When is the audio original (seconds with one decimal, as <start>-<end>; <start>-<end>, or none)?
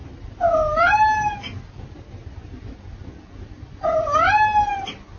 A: 0.0-5.2